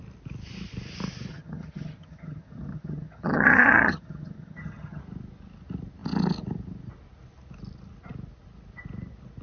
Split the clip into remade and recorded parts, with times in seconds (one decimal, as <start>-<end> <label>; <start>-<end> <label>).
0.0-1.3 recorded; 1.3-5.0 remade; 5.0-9.4 recorded